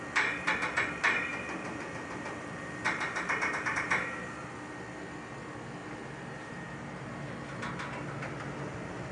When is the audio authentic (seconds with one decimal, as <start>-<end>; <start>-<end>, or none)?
0.0-1.3; 4.5-5.8; 7.1-9.1